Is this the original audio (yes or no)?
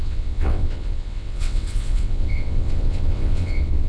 no